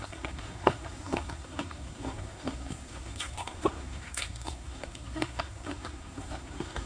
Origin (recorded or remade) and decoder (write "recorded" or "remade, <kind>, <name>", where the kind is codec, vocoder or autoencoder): remade, codec, SNAC